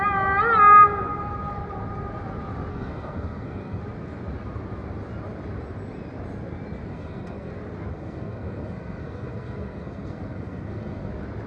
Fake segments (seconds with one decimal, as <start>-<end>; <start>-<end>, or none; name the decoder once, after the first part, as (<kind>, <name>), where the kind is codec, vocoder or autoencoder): 2.7-3.8 (codec, SNAC); 6.9-7.5; 7.9-11.1